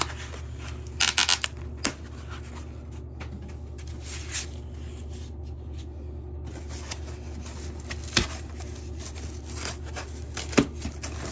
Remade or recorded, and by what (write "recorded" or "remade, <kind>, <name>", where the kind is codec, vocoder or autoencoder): recorded